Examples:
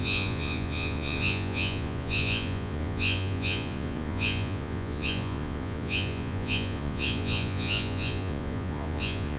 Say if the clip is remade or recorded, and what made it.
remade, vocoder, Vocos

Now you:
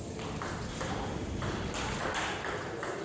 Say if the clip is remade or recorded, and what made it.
recorded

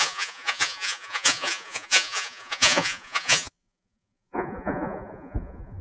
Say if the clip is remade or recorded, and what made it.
remade, vocoder, Vocos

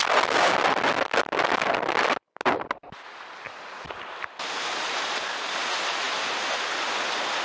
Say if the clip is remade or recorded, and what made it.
recorded